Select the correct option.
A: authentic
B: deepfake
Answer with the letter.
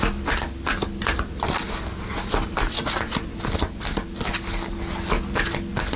A